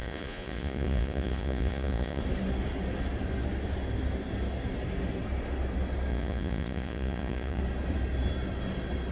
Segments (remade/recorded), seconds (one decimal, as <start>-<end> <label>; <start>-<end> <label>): 0.0-2.2 remade; 2.2-6.1 recorded; 6.1-7.6 remade; 7.6-9.1 recorded